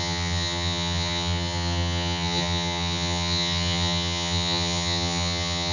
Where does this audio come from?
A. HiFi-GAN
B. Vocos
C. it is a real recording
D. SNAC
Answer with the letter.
A